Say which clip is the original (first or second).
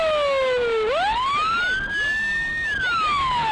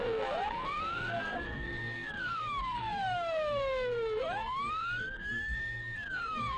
first